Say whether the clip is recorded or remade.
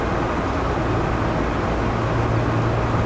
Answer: recorded